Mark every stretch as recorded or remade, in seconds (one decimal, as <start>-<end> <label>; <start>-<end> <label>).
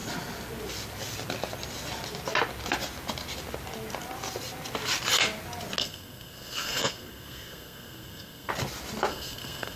0.0-5.8 recorded; 5.8-8.5 remade; 8.5-9.1 recorded; 9.1-9.8 remade